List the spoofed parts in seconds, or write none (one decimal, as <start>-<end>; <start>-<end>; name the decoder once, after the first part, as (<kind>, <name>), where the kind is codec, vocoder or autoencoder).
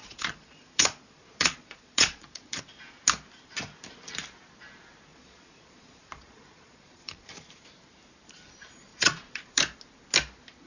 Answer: 0.0-2.6 (vocoder, Vocos); 5.1-7.5; 8.9-9.5